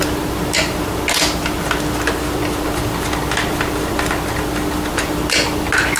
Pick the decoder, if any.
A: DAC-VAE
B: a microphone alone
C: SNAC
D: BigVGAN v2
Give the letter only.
B